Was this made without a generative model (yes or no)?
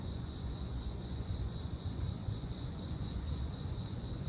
no